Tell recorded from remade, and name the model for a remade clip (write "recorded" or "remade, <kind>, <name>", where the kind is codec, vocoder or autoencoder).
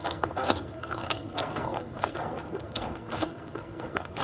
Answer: remade, codec, SNAC